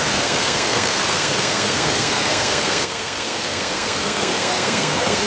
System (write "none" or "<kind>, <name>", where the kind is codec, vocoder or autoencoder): codec, SNAC